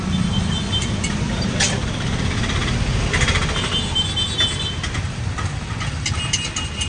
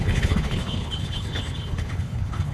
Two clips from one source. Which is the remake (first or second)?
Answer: second